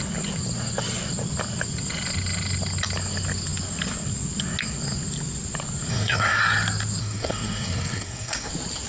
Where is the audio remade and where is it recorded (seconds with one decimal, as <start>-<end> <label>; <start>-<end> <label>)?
0.0-5.9 recorded; 5.9-6.4 remade; 6.4-7.0 recorded; 7.0-8.5 remade; 8.5-8.9 recorded